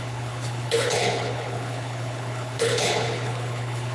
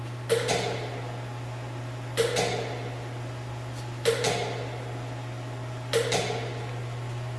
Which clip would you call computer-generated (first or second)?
first